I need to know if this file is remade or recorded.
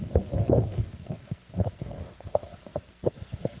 remade